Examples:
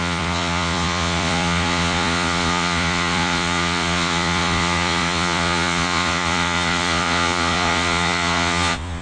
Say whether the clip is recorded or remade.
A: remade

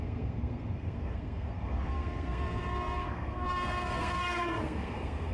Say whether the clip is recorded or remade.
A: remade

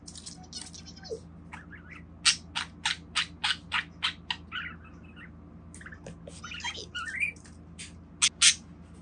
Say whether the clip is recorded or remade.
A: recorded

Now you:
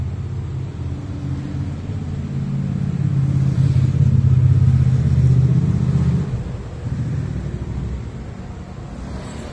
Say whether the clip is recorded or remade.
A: recorded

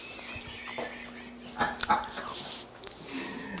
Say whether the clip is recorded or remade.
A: recorded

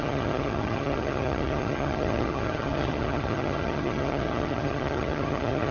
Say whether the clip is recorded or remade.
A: remade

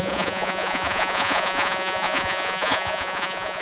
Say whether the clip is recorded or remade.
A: remade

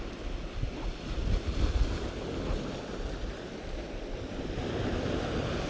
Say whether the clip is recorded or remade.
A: recorded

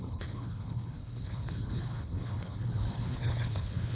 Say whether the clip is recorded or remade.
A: remade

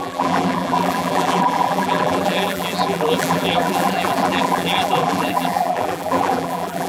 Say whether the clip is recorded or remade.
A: remade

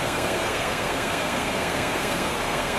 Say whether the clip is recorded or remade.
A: remade